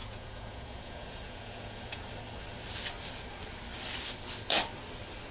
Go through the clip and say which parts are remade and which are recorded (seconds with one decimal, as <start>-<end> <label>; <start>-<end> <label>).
0.0-2.1 remade; 2.1-5.3 recorded